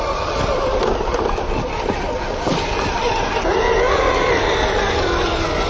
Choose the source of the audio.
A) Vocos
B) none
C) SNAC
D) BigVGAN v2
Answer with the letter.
B